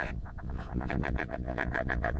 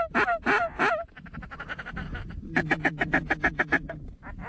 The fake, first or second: first